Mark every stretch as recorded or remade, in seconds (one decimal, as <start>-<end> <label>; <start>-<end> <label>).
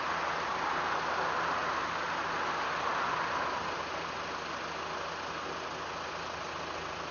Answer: 0.0-7.1 recorded